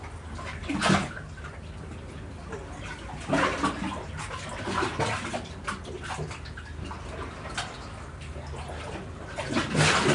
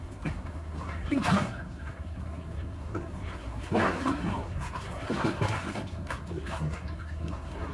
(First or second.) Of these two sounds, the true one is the first